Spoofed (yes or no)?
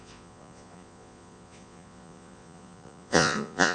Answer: yes